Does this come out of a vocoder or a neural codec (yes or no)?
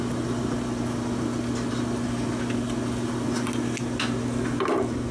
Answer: no